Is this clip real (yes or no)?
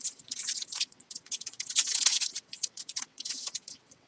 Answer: no